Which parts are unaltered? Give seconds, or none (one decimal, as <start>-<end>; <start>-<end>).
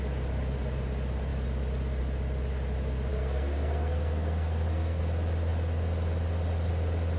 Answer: 0.0-3.1; 5.0-7.2